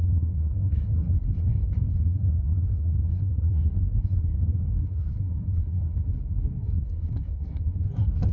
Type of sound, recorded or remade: remade